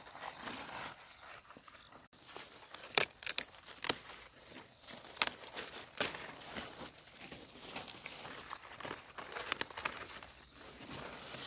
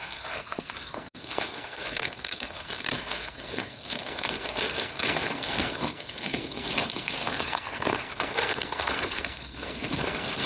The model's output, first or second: second